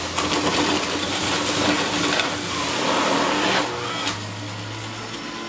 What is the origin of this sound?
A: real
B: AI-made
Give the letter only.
A